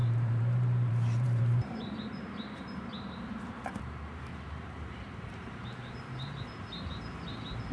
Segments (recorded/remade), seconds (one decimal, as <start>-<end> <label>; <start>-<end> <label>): 0.0-3.5 remade; 3.5-4.3 recorded; 4.3-6.4 remade; 6.4-7.7 recorded